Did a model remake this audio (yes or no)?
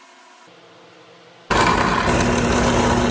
no